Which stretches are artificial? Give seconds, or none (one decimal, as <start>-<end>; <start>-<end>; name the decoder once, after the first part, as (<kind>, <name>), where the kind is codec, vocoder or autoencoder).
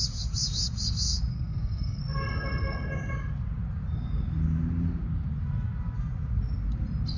1.3-2.0 (codec, SNAC)